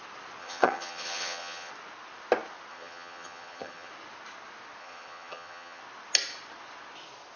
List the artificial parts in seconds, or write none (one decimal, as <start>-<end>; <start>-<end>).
0.4-1.7; 2.7-3.9; 4.8-5.8